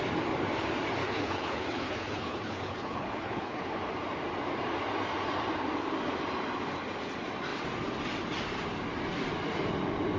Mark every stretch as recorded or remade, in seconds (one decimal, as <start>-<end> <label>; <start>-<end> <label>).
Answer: 0.0-1.0 recorded; 1.0-3.8 remade; 3.8-10.2 recorded